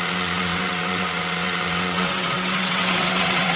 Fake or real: fake